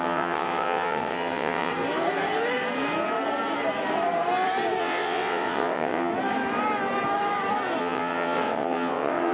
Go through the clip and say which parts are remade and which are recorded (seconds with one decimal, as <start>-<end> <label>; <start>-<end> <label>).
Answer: 0.0-1.7 remade; 1.7-4.8 recorded; 4.8-6.1 remade; 6.1-7.8 recorded; 7.8-9.3 remade